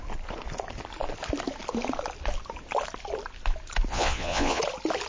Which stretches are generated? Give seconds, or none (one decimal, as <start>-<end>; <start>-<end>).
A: 3.9-4.6